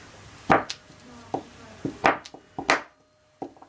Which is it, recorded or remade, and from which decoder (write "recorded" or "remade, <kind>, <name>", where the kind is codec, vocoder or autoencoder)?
recorded